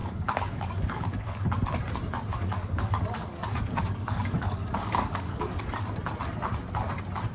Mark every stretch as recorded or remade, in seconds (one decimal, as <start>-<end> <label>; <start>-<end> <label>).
0.0-1.5 remade; 1.5-2.3 recorded; 2.3-5.6 remade; 5.6-7.3 recorded